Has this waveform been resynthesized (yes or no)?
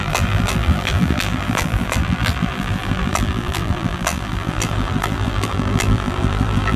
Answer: yes